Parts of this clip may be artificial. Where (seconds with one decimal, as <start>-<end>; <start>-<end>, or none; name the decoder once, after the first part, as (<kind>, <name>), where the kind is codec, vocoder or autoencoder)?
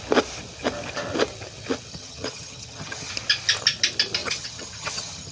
1.9-3.1 (vocoder, HiFi-GAN); 4.2-5.3